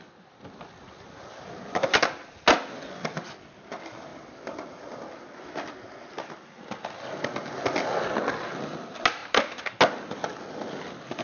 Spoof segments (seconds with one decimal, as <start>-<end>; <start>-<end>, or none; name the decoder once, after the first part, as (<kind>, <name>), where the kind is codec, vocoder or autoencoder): none